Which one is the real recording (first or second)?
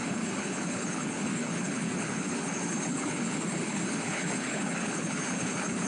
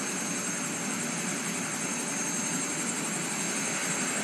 second